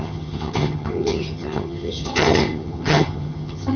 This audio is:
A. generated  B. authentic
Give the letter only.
A